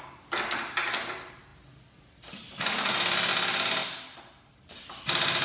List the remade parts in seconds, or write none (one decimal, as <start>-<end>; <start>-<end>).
none